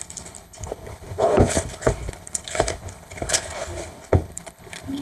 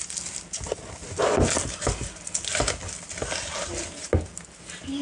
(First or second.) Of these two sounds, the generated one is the first